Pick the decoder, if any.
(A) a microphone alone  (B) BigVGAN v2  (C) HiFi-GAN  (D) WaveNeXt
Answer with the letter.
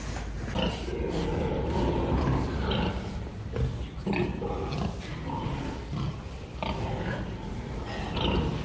A